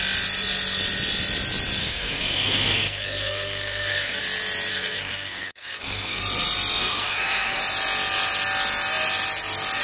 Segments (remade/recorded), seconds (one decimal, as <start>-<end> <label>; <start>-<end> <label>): 0.0-1.8 recorded; 1.8-4.2 remade; 4.2-4.7 recorded; 4.7-6.2 remade; 6.2-6.8 recorded; 6.8-7.6 remade; 7.6-9.8 recorded